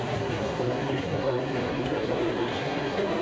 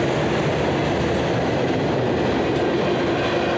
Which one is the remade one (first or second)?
first